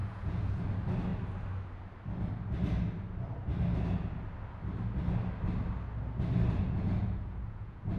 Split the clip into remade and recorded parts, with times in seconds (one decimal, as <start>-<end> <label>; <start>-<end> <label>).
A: 0.0-0.6 remade; 0.6-6.6 recorded; 6.6-8.0 remade